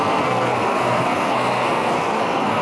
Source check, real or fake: fake